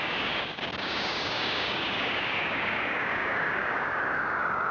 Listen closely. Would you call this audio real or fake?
fake